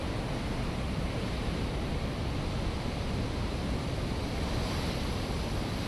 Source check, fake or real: real